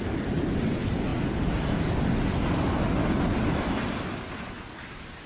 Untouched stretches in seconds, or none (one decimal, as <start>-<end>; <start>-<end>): 0.0-5.3